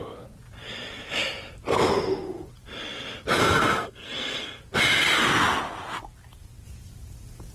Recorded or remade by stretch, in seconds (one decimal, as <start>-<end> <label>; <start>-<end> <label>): 0.0-3.4 recorded; 3.4-4.6 remade; 4.6-7.5 recorded